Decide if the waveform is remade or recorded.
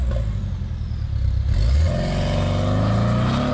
recorded